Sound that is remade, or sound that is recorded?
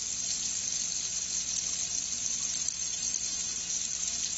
recorded